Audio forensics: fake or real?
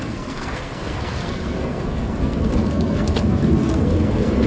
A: fake